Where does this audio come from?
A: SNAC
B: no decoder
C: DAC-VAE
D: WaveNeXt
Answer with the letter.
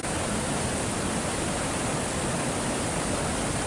B